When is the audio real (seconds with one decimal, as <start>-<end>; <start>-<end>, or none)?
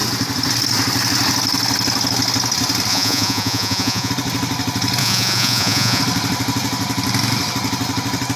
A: 0.0-2.9; 4.1-5.0; 6.0-8.4